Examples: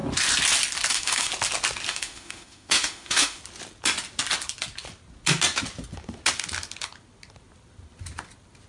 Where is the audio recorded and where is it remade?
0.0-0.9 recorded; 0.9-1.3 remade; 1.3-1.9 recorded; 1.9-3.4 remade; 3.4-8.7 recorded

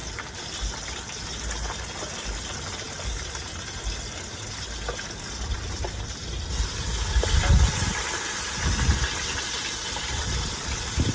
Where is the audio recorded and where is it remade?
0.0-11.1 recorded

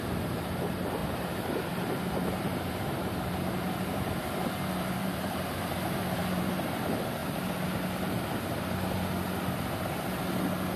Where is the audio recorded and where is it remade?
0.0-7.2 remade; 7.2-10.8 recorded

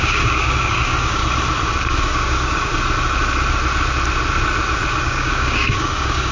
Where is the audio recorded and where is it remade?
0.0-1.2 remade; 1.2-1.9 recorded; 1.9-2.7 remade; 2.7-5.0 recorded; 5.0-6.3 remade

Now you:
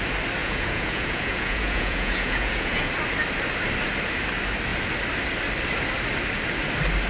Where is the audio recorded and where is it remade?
0.0-0.4 recorded; 0.4-2.9 remade; 2.9-7.1 recorded